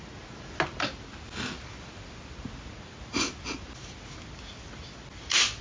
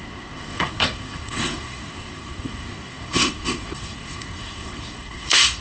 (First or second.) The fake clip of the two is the second